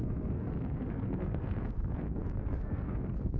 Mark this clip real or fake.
fake